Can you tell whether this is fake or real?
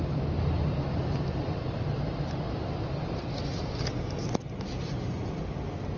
real